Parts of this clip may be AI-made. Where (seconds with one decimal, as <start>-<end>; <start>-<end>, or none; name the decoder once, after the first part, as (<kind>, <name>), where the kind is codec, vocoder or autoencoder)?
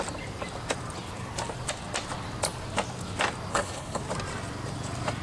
3.5-4.0 (codec, HILCodec)